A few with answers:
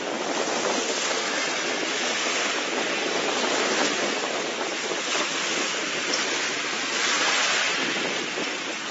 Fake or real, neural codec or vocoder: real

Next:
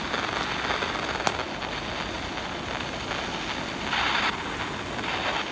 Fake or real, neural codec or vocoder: real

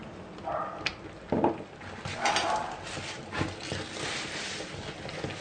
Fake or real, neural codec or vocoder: real